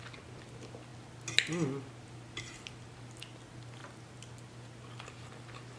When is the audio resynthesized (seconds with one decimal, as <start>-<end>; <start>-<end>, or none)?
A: none